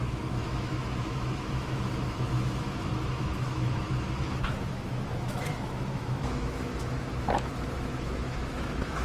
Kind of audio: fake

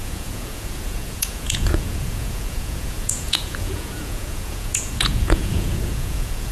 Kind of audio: fake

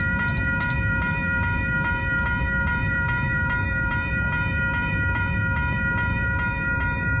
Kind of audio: fake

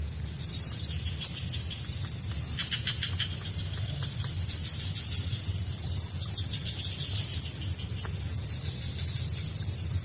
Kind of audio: real